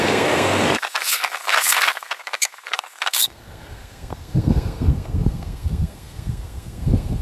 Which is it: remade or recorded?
remade